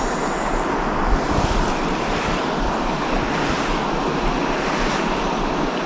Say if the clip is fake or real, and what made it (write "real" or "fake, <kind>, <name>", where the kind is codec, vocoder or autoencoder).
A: real